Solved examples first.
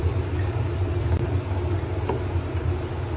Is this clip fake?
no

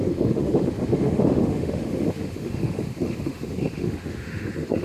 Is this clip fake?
yes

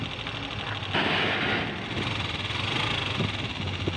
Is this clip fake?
no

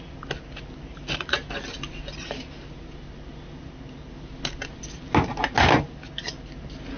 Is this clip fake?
no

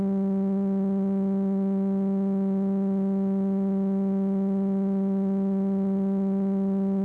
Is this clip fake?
no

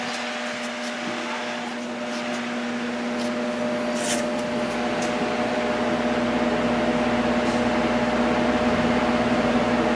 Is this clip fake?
no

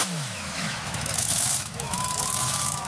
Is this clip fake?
yes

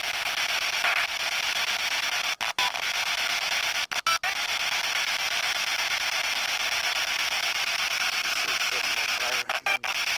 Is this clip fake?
no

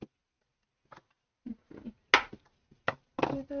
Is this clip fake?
no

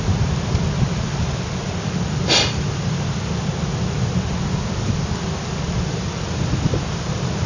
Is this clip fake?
no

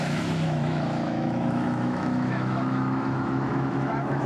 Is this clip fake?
yes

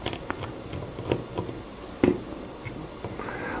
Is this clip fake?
no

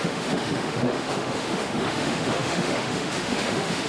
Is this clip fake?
yes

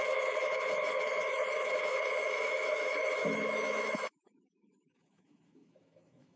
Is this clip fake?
yes